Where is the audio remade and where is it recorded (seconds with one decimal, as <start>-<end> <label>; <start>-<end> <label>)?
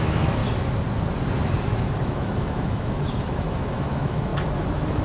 0.0-0.4 remade; 0.4-2.0 recorded; 2.0-4.3 remade; 4.3-5.0 recorded